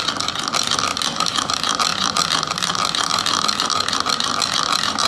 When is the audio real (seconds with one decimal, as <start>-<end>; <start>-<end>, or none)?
0.0-5.1